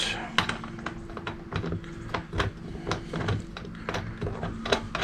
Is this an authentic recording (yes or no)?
yes